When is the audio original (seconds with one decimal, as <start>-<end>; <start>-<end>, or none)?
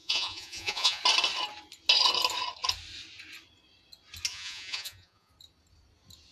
1.0-4.3; 5.3-6.3